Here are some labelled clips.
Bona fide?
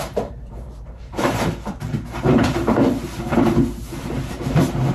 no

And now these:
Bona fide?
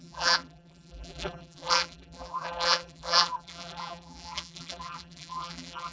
no